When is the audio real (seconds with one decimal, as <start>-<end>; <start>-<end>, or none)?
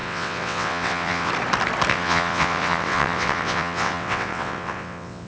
1.3-1.9